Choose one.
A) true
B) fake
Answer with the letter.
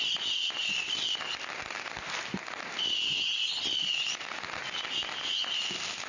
A